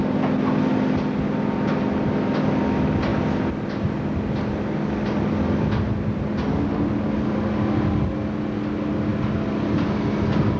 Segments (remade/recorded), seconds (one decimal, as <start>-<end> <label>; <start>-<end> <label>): 0.0-10.6 recorded

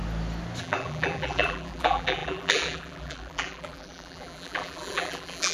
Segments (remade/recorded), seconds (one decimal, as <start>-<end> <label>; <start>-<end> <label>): 0.0-0.6 recorded; 0.6-5.5 remade

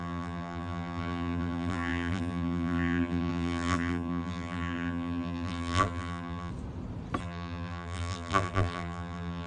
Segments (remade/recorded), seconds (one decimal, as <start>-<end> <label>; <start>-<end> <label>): 0.0-6.5 remade; 6.5-7.2 recorded; 7.2-9.5 remade

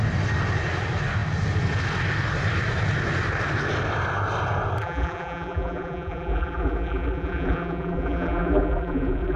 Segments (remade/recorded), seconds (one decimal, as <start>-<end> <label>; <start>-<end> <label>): 0.0-4.8 recorded; 4.8-9.4 remade

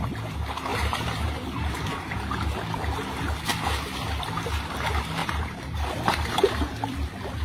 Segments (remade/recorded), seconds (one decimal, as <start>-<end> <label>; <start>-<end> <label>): 0.0-0.7 recorded; 0.7-1.7 remade; 1.7-5.2 recorded; 5.2-6.5 remade; 6.5-7.4 recorded

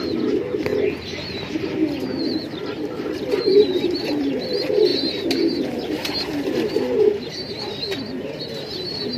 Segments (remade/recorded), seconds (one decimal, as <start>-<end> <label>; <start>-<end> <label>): 0.0-0.7 recorded; 0.7-3.3 remade; 3.3-9.2 recorded